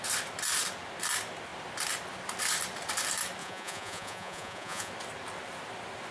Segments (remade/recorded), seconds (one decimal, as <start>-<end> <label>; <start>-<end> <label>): 0.0-3.4 recorded; 3.4-4.9 remade; 4.9-6.1 recorded